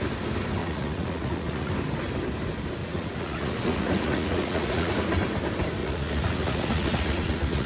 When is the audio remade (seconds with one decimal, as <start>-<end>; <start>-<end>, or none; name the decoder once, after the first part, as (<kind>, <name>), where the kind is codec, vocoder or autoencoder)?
0.6-1.7 (vocoder, Vocos); 2.8-4.9; 5.8-7.7